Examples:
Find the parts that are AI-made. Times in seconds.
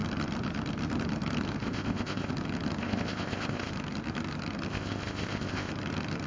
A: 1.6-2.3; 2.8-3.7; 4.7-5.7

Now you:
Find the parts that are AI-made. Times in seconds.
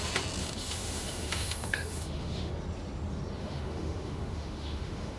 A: 0.4-2.5; 3.4-5.2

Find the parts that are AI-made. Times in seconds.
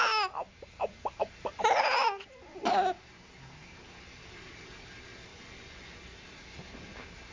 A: 2.0-2.8; 5.3-6.0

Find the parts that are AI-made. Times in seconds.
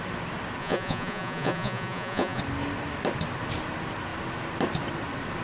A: 0.6-2.4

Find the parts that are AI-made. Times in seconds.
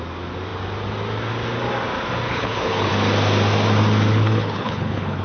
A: 2.3-2.9; 4.1-5.2